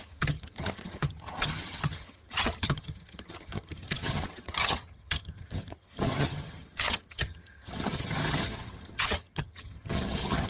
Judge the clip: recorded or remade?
remade